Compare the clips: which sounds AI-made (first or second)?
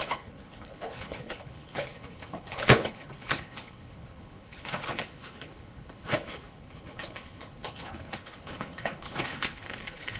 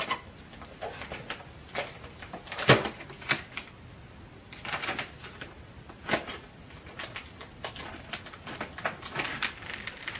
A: first